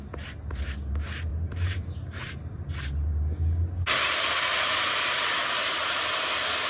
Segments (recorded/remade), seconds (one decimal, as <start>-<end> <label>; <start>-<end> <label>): 0.0-1.3 recorded; 1.3-3.1 remade; 3.1-6.7 recorded